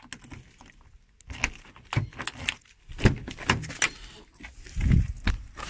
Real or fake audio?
real